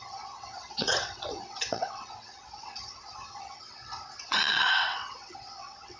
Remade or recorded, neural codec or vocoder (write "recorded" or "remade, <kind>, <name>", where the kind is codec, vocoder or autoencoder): remade, vocoder, WaveNeXt